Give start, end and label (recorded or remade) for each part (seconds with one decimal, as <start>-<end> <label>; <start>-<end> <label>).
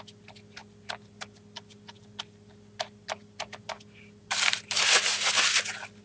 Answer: 0.0-6.0 recorded